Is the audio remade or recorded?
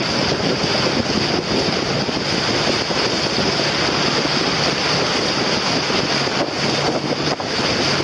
recorded